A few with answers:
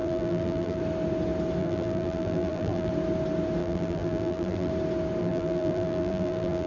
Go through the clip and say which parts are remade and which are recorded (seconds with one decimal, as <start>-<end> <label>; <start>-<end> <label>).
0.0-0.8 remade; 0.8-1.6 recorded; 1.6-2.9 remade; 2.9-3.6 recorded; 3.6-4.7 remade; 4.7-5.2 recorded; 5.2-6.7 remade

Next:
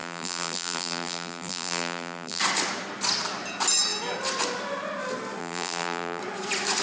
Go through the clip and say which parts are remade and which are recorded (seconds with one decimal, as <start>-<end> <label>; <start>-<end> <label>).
0.0-2.4 remade; 2.4-5.4 recorded; 5.4-6.2 remade; 6.2-6.8 recorded

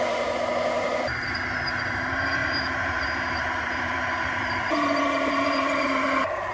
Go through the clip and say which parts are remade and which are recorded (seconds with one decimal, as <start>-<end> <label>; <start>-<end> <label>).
0.0-2.4 recorded; 2.4-6.5 remade